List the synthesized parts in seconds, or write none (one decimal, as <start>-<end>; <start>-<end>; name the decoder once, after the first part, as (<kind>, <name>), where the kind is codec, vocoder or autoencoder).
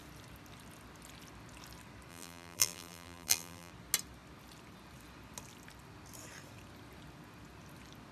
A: 2.1-3.7 (vocoder, BigVGAN v2)